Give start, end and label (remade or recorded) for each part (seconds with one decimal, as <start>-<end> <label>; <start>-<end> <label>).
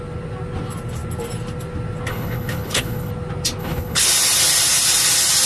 0.0-2.1 recorded; 2.1-3.1 remade; 3.1-3.6 recorded; 3.6-4.1 remade; 4.1-5.5 recorded